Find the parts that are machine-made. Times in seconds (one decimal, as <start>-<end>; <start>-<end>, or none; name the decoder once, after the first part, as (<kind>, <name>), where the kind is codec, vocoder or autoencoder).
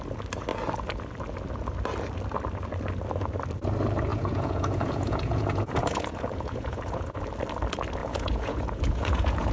4.1-7.2 (vocoder, Vocos); 8.0-9.5